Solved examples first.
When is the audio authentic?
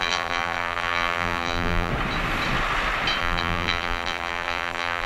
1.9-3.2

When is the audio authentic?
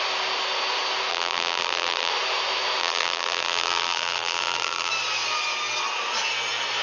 0.0-1.1; 2.1-2.8; 4.9-6.8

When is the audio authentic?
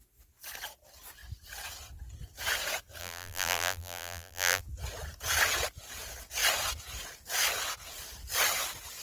0.0-3.0; 4.6-9.0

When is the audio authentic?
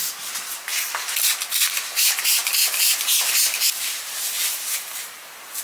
0.0-5.6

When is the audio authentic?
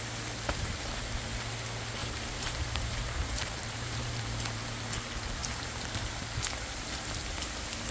0.0-2.0; 4.2-5.4; 6.1-7.9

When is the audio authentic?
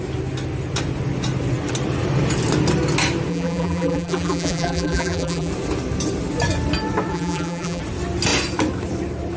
0.0-3.3; 5.5-7.1; 7.8-9.4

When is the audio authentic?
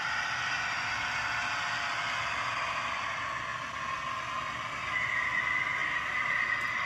3.5-4.1